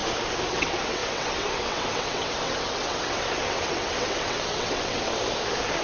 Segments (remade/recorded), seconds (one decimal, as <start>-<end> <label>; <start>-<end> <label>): 0.0-0.5 recorded; 0.5-5.1 remade; 5.1-5.8 recorded